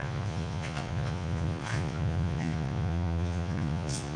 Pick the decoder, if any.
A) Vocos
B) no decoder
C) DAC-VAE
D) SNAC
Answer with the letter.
A